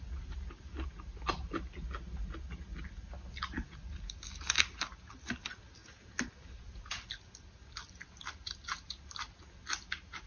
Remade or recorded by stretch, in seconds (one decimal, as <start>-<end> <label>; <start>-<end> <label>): 0.0-10.3 recorded